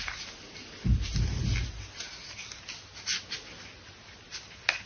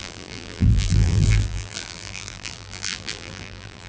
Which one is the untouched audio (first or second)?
first